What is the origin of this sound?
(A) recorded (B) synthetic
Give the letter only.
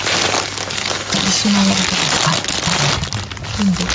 A